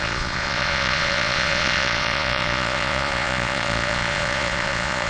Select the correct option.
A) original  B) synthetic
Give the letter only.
B